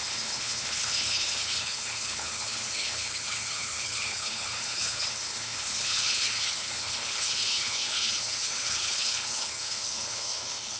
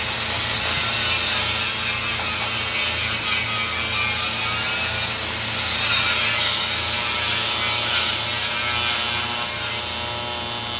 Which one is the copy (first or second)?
first